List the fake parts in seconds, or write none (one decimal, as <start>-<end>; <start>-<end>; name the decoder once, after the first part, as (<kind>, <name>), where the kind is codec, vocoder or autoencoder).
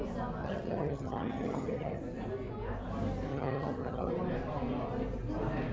0.4-2.0 (vocoder, HiFi-GAN); 3.3-4.1